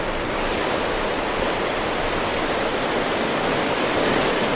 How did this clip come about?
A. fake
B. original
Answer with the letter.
B